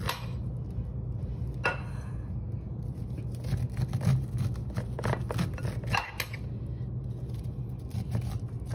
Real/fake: real